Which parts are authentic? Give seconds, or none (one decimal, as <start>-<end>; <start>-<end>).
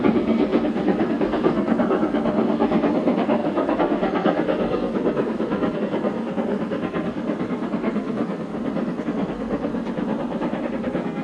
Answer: 8.5-9.0; 9.7-10.7